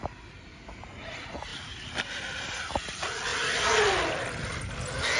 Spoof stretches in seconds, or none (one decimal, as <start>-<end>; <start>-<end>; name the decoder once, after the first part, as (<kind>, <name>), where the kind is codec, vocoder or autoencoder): none